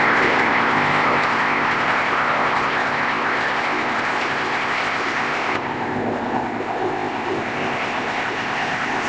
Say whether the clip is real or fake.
fake